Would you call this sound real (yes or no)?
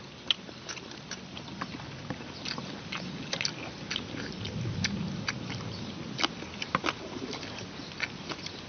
yes